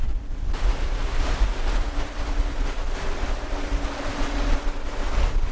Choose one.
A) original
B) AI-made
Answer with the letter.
A